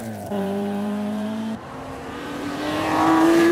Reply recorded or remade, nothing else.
remade